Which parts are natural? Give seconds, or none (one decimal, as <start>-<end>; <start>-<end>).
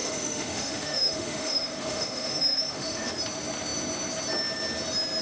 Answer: 3.1-5.2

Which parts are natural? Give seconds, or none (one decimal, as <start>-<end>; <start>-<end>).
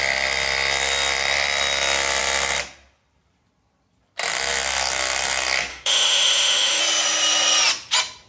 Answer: 0.0-5.7; 6.8-8.3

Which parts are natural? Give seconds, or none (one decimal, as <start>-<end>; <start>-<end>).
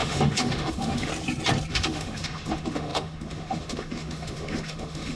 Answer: 1.1-1.7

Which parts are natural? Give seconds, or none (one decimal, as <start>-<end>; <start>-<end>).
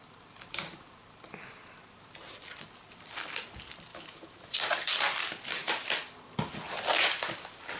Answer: 0.0-3.9; 4.5-7.8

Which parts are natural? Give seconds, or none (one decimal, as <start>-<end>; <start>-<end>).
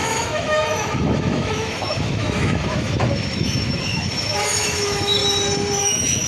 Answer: 5.2-5.8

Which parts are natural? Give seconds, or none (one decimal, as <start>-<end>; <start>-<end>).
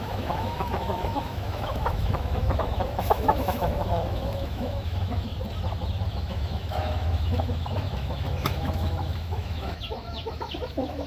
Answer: 5.3-6.2